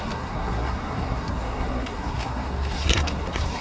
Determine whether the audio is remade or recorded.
remade